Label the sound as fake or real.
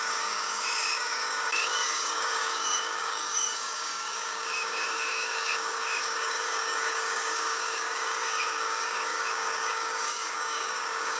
fake